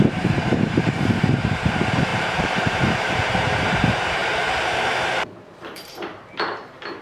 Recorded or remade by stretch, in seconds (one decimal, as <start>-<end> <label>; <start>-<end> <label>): 0.0-7.0 remade